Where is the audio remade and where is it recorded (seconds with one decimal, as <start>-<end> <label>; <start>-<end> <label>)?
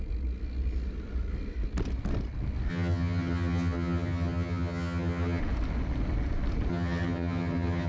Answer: 0.0-2.7 recorded; 2.7-5.4 remade; 5.4-6.7 recorded; 6.7-7.9 remade